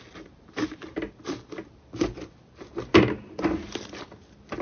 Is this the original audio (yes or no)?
yes